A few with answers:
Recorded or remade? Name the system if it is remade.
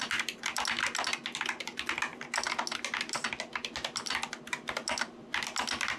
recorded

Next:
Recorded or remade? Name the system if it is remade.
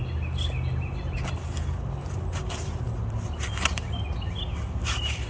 recorded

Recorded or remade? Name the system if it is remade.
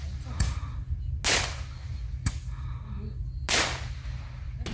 recorded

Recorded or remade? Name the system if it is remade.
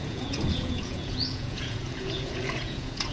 remade, vocoder, Vocos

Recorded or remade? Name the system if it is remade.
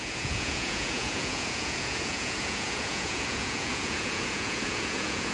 remade, vocoder, Vocos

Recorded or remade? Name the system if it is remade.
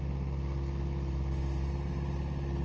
recorded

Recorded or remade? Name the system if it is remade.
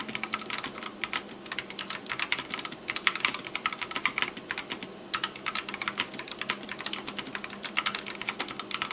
recorded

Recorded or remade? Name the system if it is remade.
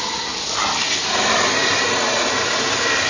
recorded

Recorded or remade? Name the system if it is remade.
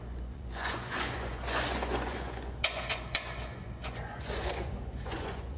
remade, vocoder, Vocos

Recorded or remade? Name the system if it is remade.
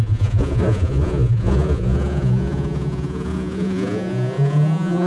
remade, vocoder, Vocos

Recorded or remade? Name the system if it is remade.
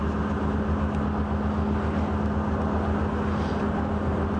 recorded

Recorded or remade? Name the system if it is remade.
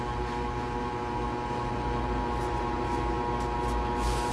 recorded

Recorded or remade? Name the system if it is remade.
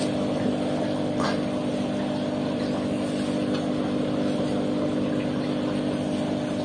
recorded